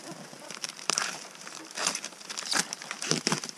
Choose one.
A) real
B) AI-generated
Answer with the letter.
B